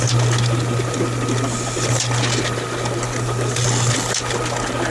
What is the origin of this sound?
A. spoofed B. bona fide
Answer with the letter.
B